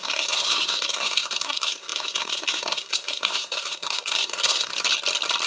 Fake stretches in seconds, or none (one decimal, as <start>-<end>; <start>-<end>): 0.0-4.7